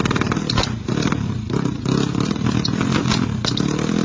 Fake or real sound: real